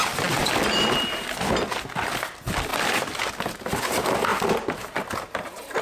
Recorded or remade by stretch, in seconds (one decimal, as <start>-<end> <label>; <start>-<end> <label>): 0.0-0.4 recorded; 0.4-1.3 remade; 1.3-2.7 recorded; 2.7-3.3 remade; 3.3-4.3 recorded; 4.3-5.0 remade; 5.0-5.8 recorded